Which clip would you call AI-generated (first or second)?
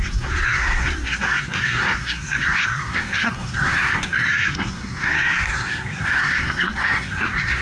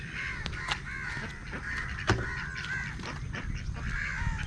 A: first